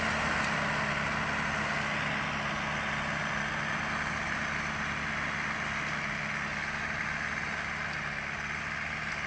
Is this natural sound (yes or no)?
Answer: yes